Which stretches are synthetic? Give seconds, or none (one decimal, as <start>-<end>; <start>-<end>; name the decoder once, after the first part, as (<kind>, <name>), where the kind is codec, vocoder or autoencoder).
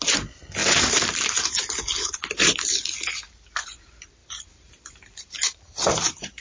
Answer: 0.6-1.8 (vocoder, BigVGAN v2); 4.2-5.9